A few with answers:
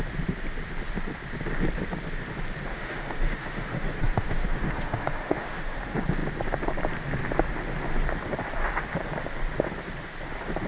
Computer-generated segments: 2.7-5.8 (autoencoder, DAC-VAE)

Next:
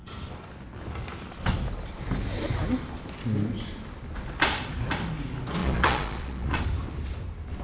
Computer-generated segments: 5.6-6.6 (vocoder, Vocos)

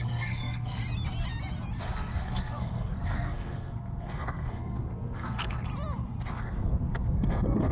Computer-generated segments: 0.0-0.8 (codec, SNAC); 1.8-5.7; 6.3-7.7

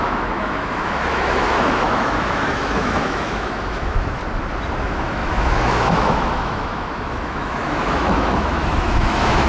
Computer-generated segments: 0.0-4.2 (autoencoder, DAC-VAE); 4.8-9.5

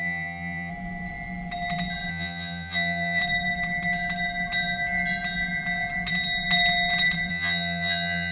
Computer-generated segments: 0.0-0.7 (vocoder, HiFi-GAN); 2.1-3.2; 7.3-8.3

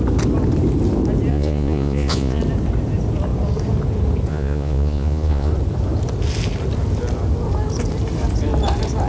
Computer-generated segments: 1.3-2.4 (vocoder, Vocos); 4.3-5.5

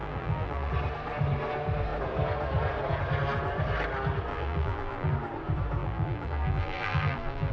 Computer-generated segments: 0.0-0.7 (vocoder, BigVGAN v2); 4.3-5.1; 5.8-7.5

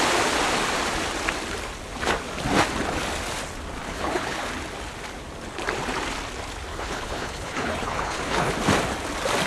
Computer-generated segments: 3.8-4.5 (codec, HILCodec); 6.7-8.5